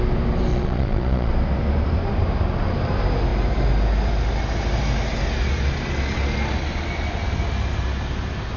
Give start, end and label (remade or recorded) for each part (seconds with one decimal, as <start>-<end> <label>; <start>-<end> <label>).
0.0-0.5 recorded; 0.5-1.3 remade; 1.3-8.6 recorded